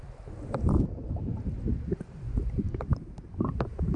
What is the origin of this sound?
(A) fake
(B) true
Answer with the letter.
A